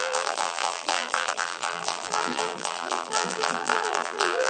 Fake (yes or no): yes